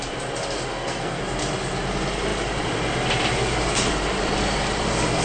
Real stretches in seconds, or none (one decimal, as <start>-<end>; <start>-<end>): 0.0-0.7; 1.2-5.2